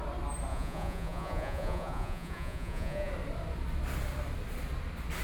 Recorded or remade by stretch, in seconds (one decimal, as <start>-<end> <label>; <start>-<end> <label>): 0.0-0.5 recorded; 0.5-3.1 remade; 3.1-5.2 recorded